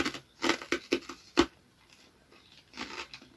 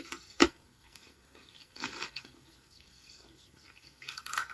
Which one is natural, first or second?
first